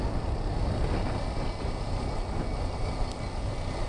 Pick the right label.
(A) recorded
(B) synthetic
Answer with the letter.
A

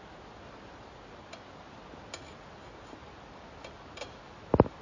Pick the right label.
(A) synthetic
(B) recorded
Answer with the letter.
B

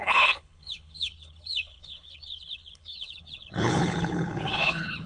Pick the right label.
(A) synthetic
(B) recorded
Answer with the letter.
A